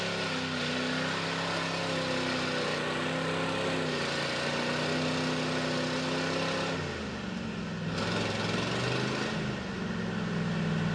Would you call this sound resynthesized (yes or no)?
no